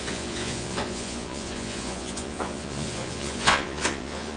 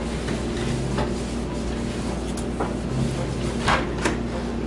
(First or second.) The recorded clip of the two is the second